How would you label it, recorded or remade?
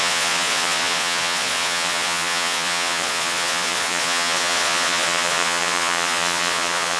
remade